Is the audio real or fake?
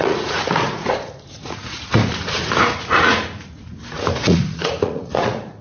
fake